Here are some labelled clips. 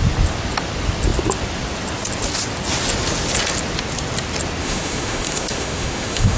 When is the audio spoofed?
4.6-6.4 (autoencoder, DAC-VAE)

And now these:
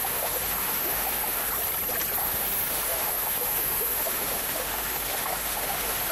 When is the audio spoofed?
0.0-1.5 (autoencoder, DAC-VAE); 2.2-6.1

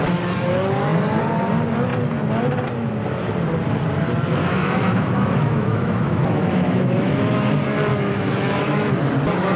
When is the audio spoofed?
4.4-7.5 (autoencoder, DAC-VAE); 7.9-8.9

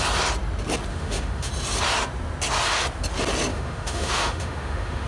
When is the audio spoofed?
0.9-1.5 (autoencoder, DAC-VAE); 3.5-5.1

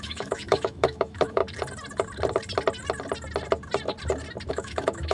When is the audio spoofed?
0.0-1.4 (autoencoder, DAC-VAE); 4.5-5.1

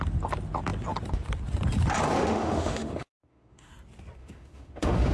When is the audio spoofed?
2.2-3.7 (autoencoder, DAC-VAE); 4.2-5.1

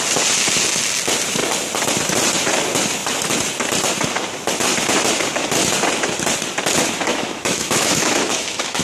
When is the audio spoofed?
7.1-8.8 (autoencoder, DAC-VAE)

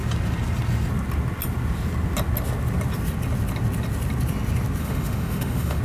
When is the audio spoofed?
4.8-5.8 (autoencoder, DAC-VAE)